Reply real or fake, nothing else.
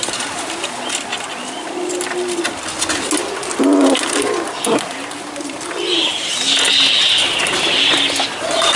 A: real